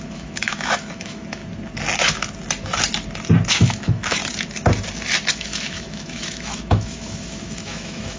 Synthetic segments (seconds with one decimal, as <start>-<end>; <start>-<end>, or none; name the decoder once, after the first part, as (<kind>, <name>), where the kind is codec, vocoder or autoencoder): 0.0-1.4 (autoencoder, DAC-VAE); 3.5-4.2; 5.3-8.2